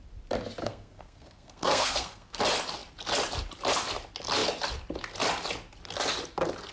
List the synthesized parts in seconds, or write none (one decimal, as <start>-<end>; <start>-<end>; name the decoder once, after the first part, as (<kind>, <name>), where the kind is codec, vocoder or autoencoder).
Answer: 0.6-2.4 (codec, SNAC)